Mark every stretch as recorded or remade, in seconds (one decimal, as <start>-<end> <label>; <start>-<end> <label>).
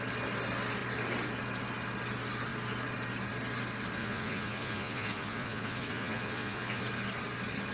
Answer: 0.0-4.0 recorded; 4.0-6.8 remade; 6.8-7.7 recorded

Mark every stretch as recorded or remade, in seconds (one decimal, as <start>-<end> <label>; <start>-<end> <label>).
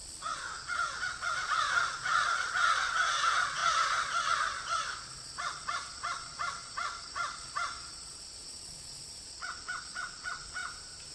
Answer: 0.0-10.6 remade; 10.6-11.1 recorded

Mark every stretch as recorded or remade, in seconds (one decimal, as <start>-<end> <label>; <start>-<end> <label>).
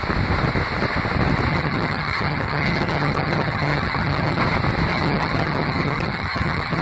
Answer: 0.0-1.5 recorded; 1.5-4.4 remade; 4.4-4.9 recorded; 4.9-6.8 remade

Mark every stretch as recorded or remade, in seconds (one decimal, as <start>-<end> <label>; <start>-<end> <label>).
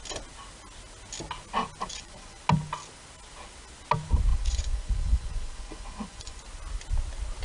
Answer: 0.0-1.9 recorded; 1.9-2.4 remade; 2.4-4.3 recorded; 4.3-6.4 remade; 6.4-7.4 recorded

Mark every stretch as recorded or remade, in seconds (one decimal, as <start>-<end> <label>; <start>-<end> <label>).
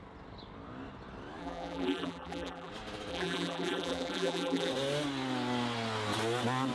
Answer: 0.0-1.4 recorded; 1.4-2.7 remade; 2.7-3.1 recorded; 3.1-4.7 remade; 4.7-6.7 recorded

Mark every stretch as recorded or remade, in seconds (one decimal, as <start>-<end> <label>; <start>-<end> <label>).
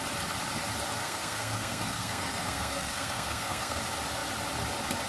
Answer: 0.0-1.0 recorded; 1.0-3.8 remade; 3.8-5.1 recorded